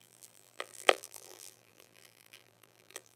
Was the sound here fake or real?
fake